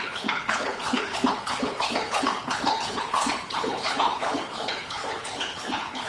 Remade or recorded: remade